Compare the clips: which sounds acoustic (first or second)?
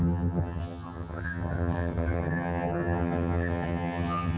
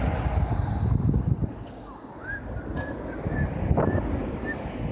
second